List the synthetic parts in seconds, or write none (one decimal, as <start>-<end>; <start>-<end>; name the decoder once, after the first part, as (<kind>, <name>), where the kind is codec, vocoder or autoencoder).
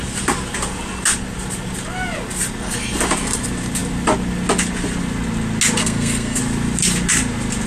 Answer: 5.8-6.4 (codec, SNAC)